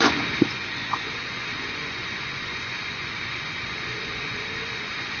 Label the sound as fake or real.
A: fake